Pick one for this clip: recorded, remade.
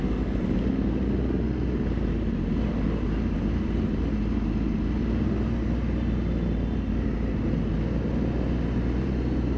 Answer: recorded